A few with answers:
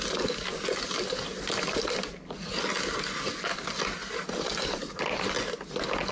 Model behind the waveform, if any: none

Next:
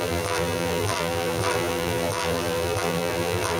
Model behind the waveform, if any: vocoder, BigVGAN v2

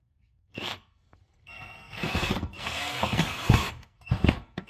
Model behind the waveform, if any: codec, SNAC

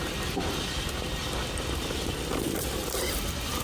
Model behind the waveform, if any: none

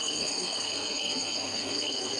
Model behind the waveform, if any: codec, SNAC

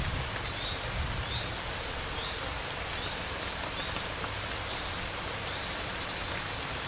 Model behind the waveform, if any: none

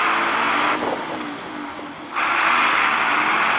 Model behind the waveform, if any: none